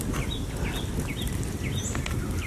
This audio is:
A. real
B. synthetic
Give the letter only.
A